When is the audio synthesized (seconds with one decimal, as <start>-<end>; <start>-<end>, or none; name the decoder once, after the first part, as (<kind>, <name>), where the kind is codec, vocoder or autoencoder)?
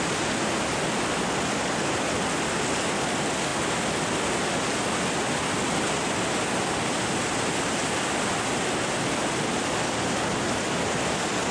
none